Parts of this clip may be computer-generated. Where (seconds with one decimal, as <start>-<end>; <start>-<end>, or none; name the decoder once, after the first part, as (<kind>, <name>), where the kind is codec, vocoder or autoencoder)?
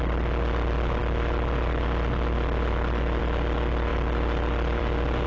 none